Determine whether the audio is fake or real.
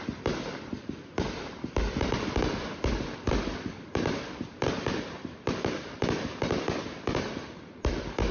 fake